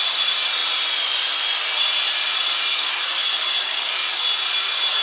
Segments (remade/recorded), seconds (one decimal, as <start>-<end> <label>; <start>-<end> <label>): 0.0-2.7 recorded; 2.7-4.2 remade; 4.2-5.0 recorded